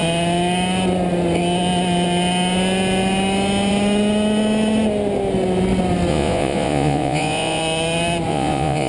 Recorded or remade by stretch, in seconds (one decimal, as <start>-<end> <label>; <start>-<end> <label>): 0.0-6.1 recorded; 6.1-7.6 remade; 7.6-8.3 recorded; 8.3-8.9 remade